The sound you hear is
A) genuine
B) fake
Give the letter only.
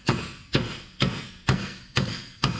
B